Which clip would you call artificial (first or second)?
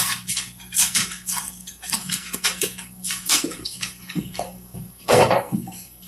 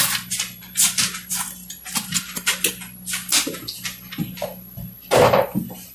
first